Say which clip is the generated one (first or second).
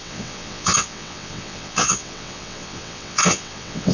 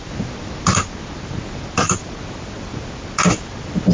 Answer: first